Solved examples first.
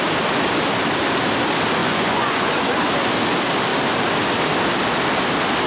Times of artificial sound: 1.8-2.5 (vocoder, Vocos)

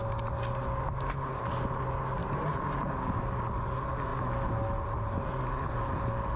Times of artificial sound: none

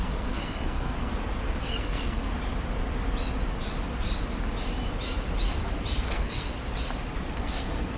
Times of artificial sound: 0.0-1.1 (codec, SNAC); 1.6-2.3; 6.0-6.5; 7.3-8.0

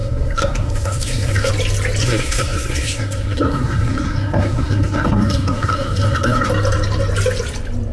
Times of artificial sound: 0.0-1.5 (codec, SNAC); 2.0-6.5